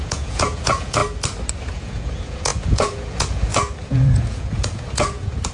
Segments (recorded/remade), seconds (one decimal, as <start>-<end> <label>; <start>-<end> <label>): 0.0-1.0 remade; 1.0-1.6 recorded; 1.6-5.5 remade